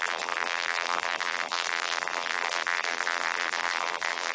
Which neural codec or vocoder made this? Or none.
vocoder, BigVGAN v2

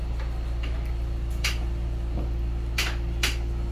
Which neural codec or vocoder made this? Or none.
none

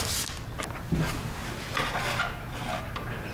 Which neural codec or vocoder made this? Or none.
none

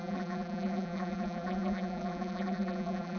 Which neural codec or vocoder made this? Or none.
vocoder, BigVGAN v2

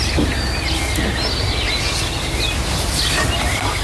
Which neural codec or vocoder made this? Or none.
none